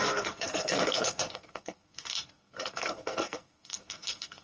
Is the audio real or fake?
fake